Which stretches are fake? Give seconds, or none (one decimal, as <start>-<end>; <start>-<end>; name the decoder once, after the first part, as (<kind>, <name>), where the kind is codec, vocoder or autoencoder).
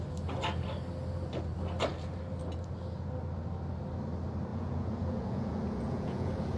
4.5-6.6 (vocoder, Vocos)